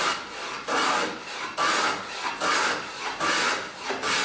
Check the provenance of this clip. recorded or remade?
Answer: recorded